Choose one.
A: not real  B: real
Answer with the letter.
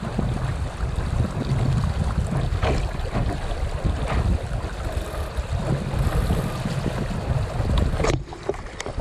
B